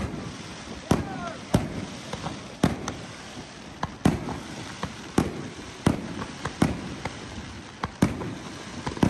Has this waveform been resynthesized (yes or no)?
yes